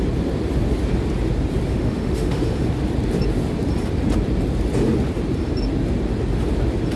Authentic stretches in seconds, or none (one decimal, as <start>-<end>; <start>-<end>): 0.0-1.7; 2.7-7.0

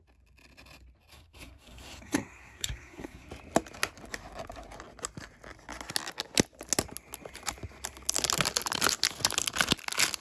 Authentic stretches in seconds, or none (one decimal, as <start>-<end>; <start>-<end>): 0.0-1.1; 3.3-10.2

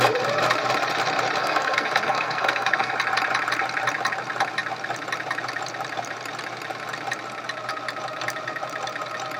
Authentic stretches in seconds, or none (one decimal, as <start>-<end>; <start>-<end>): 0.0-1.4; 2.9-9.4

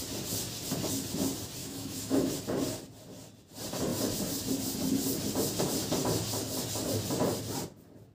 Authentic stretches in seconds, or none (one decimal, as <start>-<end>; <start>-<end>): 0.0-1.6; 2.3-8.1